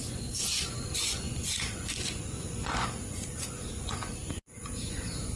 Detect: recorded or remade remade